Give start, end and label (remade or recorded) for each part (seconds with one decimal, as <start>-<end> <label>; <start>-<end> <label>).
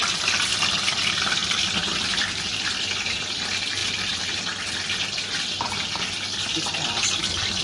0.0-7.6 recorded